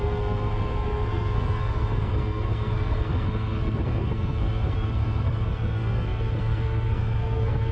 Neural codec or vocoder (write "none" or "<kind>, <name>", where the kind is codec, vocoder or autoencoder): codec, SNAC